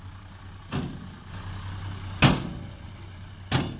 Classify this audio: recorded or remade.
recorded